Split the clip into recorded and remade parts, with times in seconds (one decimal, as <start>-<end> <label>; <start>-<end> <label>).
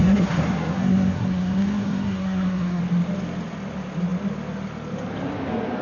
0.0-2.8 remade; 2.8-5.8 recorded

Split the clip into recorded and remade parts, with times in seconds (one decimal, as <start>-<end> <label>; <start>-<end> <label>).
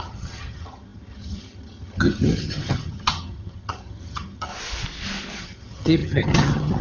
0.0-4.5 remade; 4.5-5.4 recorded; 5.4-6.8 remade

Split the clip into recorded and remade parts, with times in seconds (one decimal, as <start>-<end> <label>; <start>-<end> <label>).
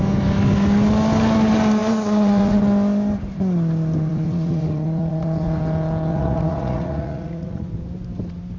0.0-1.8 recorded; 1.8-2.6 remade; 2.6-4.1 recorded; 4.1-5.6 remade; 5.6-6.1 recorded; 6.1-7.7 remade; 7.7-8.6 recorded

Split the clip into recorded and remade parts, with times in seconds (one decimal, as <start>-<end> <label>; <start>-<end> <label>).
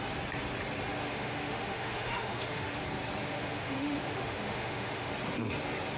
0.0-1.0 recorded; 1.0-2.8 remade; 2.8-3.2 recorded; 3.2-5.1 remade; 5.1-6.0 recorded